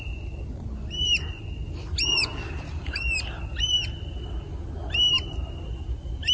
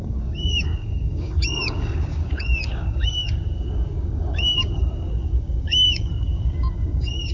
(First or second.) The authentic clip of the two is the first